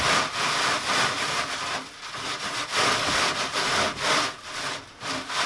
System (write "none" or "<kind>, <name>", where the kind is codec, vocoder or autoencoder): none